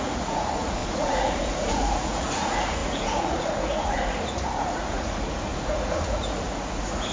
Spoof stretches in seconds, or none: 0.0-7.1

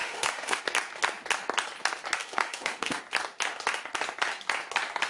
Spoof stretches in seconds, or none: 0.0-0.6; 2.2-3.0

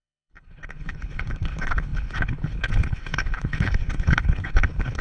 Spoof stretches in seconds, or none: 0.0-5.0

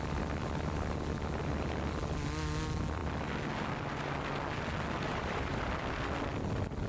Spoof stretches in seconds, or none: 5.1-5.7